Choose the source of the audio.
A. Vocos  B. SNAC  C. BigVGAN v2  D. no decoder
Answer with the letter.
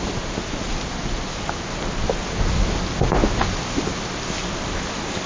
D